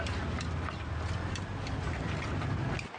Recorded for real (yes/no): yes